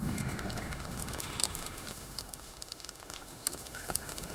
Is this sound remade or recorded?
remade